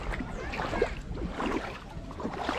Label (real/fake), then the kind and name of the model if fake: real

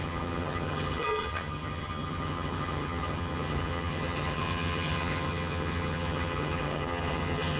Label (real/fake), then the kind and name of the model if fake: fake, vocoder, HiFi-GAN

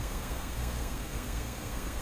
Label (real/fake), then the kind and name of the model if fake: fake, codec, SNAC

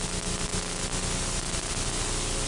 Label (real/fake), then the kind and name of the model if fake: real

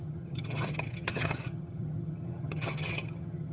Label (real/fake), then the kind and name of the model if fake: fake, vocoder, HiFi-GAN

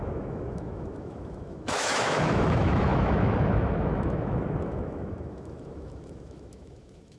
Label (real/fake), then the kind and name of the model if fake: fake, autoencoder, DAC-VAE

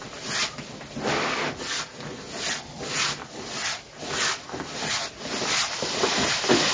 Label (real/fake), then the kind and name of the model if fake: real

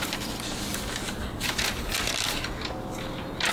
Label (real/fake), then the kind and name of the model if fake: real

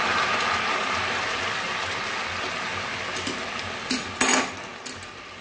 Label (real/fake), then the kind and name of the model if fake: real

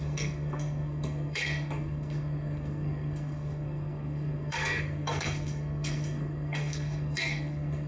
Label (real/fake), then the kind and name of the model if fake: fake, codec, SNAC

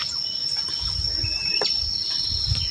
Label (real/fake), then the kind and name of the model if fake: real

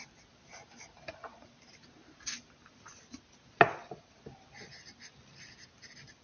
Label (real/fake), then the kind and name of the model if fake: real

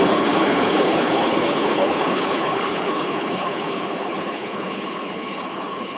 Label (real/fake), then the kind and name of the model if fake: fake, codec, HILCodec